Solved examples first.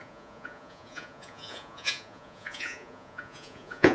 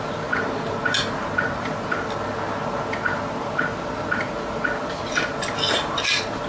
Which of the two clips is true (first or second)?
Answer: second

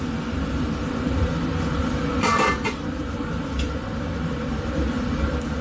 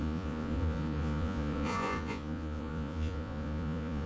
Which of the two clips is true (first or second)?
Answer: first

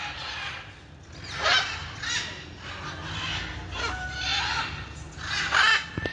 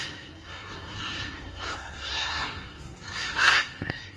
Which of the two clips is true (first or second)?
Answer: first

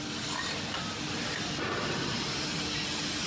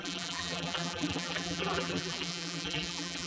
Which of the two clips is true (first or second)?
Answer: first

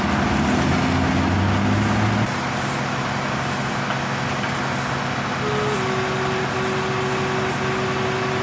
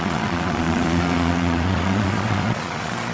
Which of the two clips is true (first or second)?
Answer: first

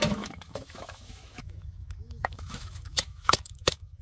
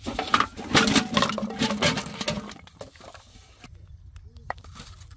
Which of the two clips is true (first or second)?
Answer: second